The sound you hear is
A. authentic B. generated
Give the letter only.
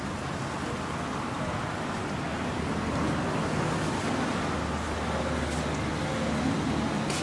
A